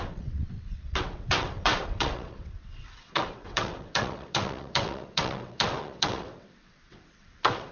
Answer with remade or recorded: remade